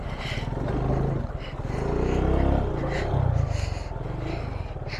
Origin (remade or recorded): recorded